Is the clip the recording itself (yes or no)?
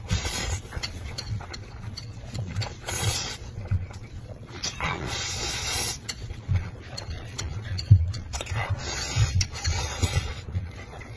no